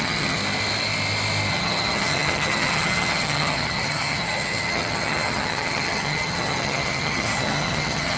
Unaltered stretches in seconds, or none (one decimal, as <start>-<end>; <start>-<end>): 0.4-1.5